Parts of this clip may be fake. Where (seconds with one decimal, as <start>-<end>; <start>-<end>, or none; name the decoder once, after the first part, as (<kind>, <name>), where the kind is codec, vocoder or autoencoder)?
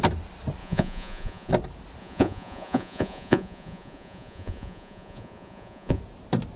0.6-1.5 (vocoder, Vocos); 2.0-6.0